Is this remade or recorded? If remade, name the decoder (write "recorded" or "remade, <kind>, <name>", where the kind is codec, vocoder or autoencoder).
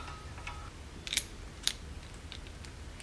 recorded